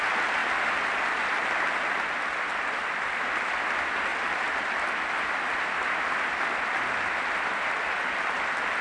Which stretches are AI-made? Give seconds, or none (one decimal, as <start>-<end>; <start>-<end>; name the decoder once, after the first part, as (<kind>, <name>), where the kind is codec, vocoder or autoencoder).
none